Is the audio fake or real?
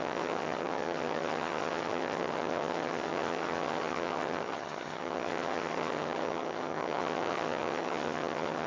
fake